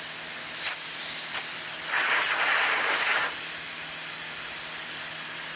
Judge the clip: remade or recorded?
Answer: recorded